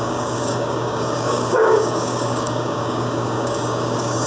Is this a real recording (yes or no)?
no